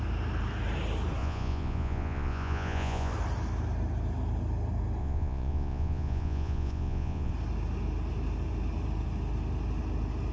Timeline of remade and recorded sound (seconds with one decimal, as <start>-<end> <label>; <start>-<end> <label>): 0.0-1.2 recorded; 1.2-3.1 remade; 3.1-5.0 recorded; 5.0-7.3 remade; 7.3-10.3 recorded